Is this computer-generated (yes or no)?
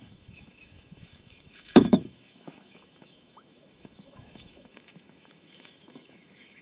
yes